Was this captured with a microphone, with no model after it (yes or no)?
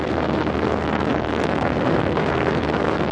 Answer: no